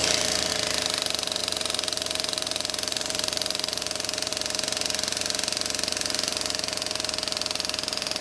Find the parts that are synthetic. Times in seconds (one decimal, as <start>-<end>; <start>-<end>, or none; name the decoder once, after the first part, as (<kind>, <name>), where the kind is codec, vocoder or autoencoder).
0.0-0.5 (vocoder, BigVGAN v2); 1.4-4.3